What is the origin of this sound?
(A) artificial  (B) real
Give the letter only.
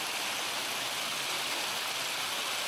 B